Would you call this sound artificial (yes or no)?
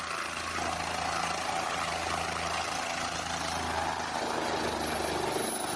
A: no